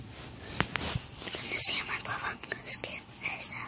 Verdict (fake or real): real